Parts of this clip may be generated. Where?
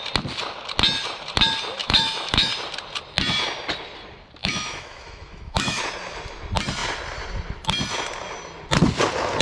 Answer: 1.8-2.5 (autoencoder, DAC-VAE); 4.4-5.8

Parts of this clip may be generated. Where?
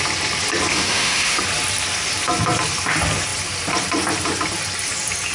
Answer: 0.7-1.4 (autoencoder, DAC-VAE)